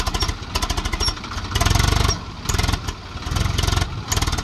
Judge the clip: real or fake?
real